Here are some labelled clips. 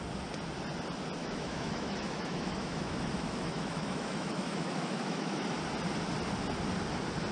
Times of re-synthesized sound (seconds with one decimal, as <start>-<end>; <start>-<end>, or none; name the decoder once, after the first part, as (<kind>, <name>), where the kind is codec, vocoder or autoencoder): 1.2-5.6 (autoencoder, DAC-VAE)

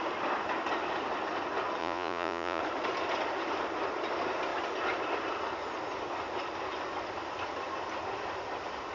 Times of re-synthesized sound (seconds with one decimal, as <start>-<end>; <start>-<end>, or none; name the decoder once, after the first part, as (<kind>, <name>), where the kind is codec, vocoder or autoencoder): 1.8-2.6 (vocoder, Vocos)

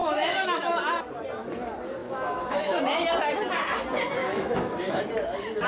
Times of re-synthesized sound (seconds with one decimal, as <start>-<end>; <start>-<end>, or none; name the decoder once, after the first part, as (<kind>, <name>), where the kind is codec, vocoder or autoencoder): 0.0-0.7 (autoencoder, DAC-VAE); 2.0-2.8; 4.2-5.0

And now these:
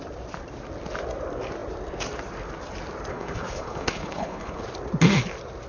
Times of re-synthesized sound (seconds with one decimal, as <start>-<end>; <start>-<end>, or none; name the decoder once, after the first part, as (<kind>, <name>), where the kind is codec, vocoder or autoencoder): 3.1-4.6 (codec, HILCodec)

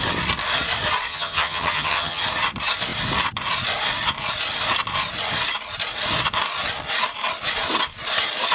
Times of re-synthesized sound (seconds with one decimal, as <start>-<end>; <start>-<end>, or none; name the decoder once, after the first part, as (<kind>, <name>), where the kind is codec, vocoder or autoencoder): 1.1-2.2 (vocoder, HiFi-GAN)

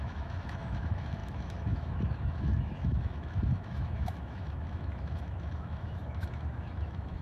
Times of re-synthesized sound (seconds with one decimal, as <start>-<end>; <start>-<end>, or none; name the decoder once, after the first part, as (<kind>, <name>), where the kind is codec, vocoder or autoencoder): 0.0-7.2 (autoencoder, DAC-VAE)

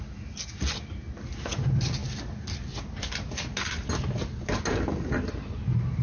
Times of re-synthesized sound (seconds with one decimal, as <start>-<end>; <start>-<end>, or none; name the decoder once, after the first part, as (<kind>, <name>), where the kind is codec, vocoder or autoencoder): none

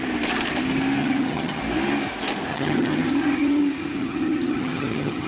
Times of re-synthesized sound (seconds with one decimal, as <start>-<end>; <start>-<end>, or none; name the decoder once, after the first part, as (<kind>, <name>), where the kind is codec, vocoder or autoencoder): 1.0-1.6 (vocoder, HiFi-GAN); 2.5-3.6; 4.0-5.3